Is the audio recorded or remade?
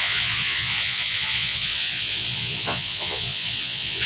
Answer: remade